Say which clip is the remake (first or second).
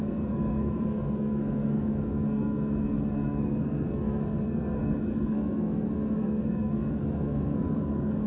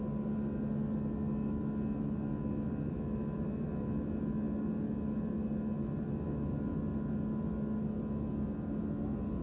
first